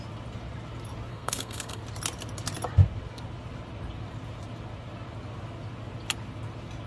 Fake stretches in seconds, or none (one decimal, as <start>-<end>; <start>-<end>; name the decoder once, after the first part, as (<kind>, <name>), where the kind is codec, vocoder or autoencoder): 1.1-1.8 (codec, SNAC)